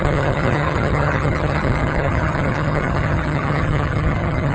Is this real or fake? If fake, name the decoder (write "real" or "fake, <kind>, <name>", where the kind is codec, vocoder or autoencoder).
fake, vocoder, HiFi-GAN